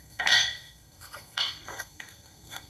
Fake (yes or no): yes